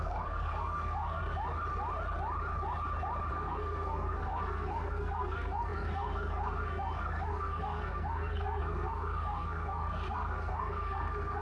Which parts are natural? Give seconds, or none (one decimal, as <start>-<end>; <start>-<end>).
1.2-3.3